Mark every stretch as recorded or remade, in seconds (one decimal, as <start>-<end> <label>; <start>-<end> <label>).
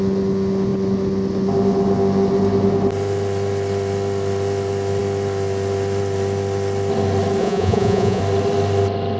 0.0-7.4 recorded; 7.4-8.2 remade; 8.2-9.2 recorded